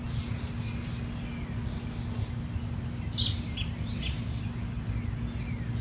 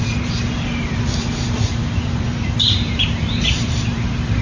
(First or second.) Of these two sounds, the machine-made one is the second